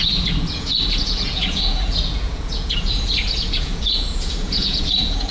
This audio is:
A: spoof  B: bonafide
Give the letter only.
A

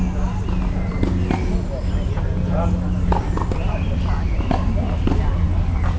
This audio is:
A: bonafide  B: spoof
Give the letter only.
A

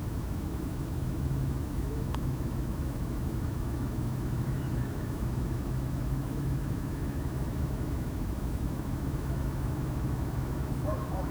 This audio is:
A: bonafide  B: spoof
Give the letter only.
B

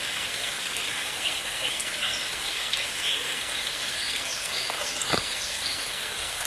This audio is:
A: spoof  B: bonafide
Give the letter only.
A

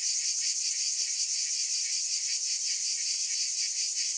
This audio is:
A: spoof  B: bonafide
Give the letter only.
B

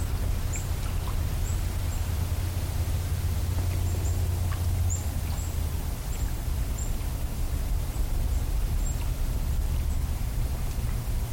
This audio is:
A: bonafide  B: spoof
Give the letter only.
A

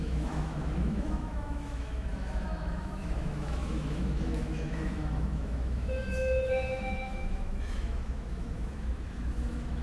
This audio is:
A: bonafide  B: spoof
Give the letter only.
B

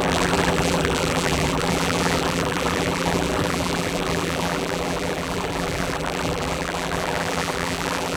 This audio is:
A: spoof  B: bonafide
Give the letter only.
A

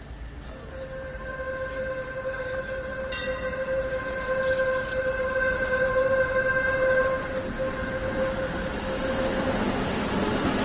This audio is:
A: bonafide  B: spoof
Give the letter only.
A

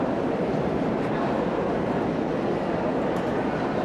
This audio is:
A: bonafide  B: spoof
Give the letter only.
A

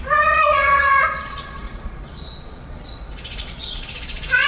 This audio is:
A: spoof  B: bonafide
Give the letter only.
A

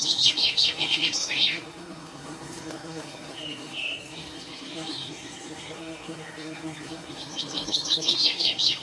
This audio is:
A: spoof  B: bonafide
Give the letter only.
A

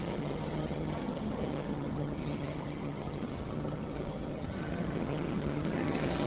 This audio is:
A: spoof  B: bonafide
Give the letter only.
A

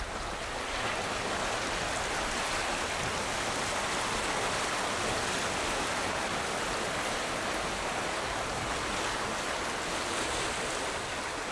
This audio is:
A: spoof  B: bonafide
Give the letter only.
B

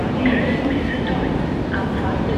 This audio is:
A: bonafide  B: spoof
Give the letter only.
A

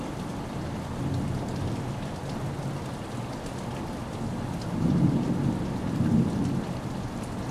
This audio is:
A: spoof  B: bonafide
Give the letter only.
B